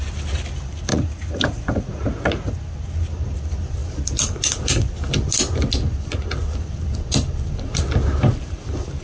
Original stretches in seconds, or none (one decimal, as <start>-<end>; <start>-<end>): 0.0-0.9; 2.5-9.0